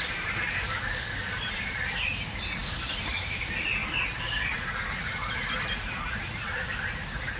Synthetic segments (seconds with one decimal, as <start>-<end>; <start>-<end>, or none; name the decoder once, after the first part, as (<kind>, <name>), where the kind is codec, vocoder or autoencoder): none

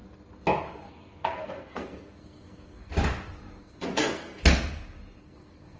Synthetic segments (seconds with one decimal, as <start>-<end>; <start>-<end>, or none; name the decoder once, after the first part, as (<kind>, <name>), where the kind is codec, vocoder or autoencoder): 0.9-2.9 (codec, SNAC); 3.6-4.3; 5.2-5.8

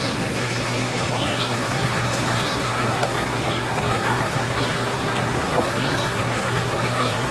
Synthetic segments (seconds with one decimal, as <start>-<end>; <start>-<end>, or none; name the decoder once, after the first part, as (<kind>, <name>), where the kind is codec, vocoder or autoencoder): 0.0-7.3 (codec, SNAC)

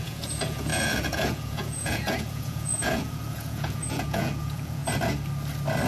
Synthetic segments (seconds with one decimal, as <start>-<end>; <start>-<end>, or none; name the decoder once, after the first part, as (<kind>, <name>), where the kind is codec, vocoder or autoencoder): 0.0-4.8 (vocoder, Vocos)

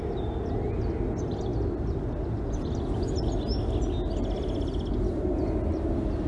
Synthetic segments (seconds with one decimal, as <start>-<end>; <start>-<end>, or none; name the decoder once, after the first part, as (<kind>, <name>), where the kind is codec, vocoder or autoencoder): none

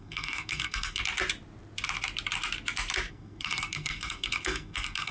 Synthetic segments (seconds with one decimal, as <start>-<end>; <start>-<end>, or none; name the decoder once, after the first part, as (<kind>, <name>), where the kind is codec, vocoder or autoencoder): 0.0-1.0 (codec, SNAC); 3.1-5.1

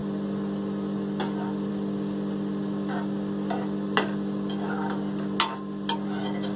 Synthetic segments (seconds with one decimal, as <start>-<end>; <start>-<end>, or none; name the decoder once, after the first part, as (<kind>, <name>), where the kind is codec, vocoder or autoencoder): none